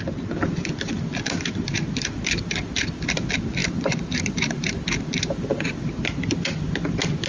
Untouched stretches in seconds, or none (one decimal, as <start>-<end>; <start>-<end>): 0.0-3.6; 4.7-7.3

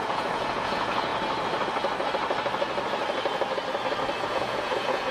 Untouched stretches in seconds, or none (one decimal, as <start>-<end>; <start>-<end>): 1.1-4.2

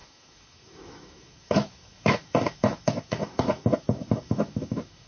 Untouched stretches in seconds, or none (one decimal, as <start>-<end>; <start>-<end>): none